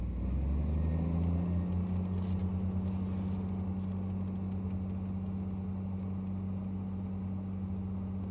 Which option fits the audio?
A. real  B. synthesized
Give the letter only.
A